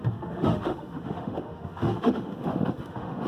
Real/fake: fake